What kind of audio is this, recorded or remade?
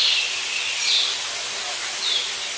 recorded